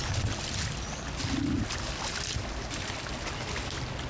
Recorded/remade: recorded